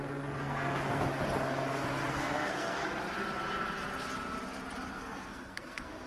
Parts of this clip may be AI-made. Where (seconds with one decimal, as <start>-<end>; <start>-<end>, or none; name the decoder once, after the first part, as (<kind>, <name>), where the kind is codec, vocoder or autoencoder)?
0.0-1.1 (codec, SNAC); 2.1-2.8; 4.9-6.1